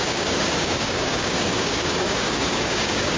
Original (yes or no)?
no